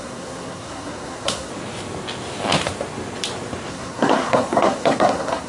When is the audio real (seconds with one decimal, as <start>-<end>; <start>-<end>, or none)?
1.5-3.7